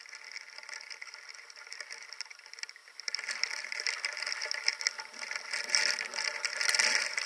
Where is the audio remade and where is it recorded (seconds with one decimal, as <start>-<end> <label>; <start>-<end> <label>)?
0.0-7.3 recorded